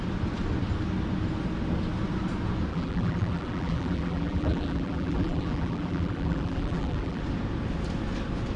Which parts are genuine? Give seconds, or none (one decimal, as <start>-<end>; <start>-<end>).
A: 0.0-2.7; 7.2-8.6